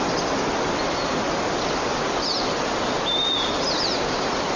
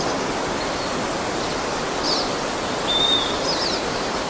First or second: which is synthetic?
second